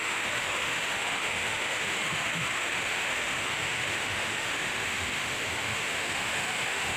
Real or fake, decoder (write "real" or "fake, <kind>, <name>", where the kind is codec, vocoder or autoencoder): fake, autoencoder, DAC-VAE